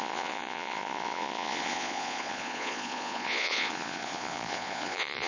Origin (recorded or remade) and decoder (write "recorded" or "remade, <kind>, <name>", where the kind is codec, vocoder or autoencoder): remade, vocoder, Vocos